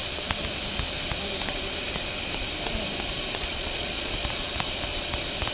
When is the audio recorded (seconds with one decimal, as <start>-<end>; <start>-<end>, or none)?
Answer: 0.0-3.4; 4.1-5.5